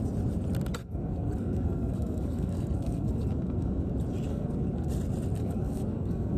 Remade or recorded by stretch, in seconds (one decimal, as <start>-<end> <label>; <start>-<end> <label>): 0.0-0.8 recorded; 0.8-3.9 remade; 3.9-4.3 recorded; 4.3-4.9 remade; 4.9-5.4 recorded; 5.4-6.4 remade